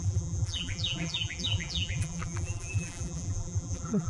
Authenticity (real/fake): fake